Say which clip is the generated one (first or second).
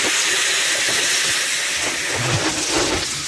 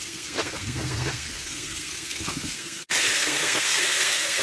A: second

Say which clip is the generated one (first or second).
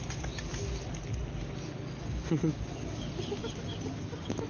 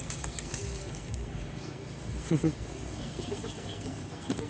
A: second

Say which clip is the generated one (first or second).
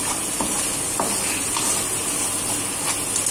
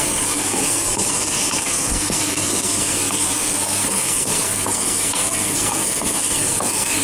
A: second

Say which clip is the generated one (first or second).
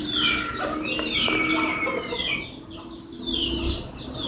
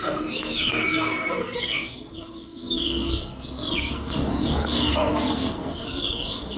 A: second